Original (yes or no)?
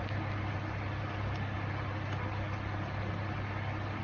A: yes